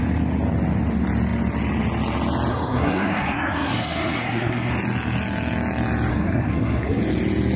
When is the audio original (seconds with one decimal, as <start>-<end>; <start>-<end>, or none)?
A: 0.0-2.5; 4.7-6.1; 7.0-7.6